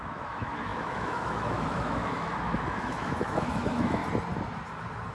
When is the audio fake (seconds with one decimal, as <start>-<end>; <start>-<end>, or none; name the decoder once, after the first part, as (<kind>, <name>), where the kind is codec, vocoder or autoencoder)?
0.0-4.0 (autoencoder, DAC-VAE)